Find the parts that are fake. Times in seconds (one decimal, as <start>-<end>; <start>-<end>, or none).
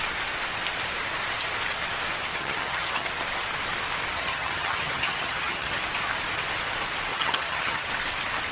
2.3-3.1; 4.2-5.8; 7.1-7.9